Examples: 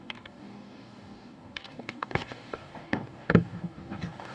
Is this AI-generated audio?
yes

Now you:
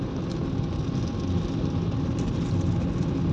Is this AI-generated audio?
no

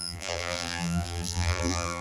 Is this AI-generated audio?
yes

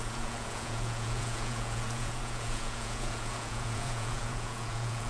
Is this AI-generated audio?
yes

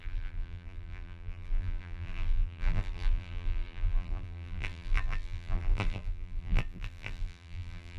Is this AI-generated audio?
yes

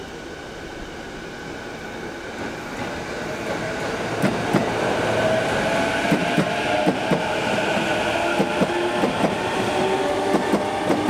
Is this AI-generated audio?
no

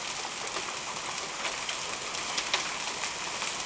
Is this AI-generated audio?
no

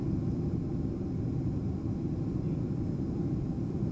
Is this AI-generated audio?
no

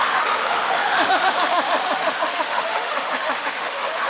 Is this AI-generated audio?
yes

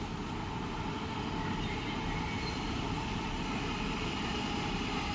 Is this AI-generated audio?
no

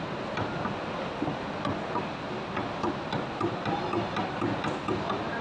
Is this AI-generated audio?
no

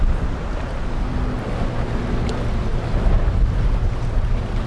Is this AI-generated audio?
no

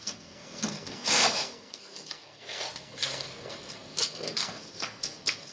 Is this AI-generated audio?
yes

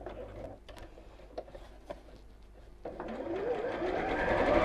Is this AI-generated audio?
no